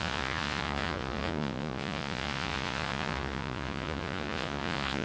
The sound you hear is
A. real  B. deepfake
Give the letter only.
B